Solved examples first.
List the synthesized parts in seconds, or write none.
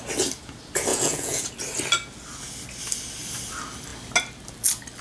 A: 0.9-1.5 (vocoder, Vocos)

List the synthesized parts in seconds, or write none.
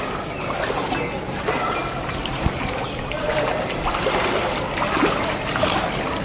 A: none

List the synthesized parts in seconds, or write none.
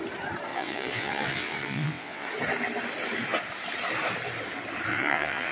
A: 0.5-2.3 (vocoder, WaveNeXt); 4.9-5.5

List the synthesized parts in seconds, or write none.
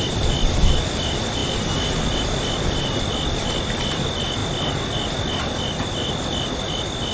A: none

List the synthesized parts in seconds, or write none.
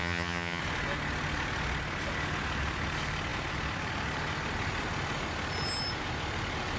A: 0.0-0.6 (vocoder, HiFi-GAN)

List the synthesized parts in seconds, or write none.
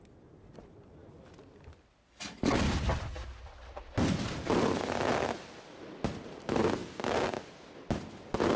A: none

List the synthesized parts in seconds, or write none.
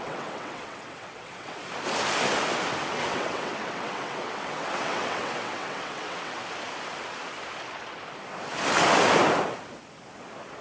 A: 0.0-1.6 (vocoder, WaveNeXt); 2.8-6.4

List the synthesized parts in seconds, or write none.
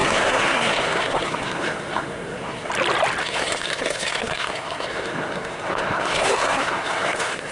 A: 0.0-2.7 (codec, SNAC); 3.2-7.5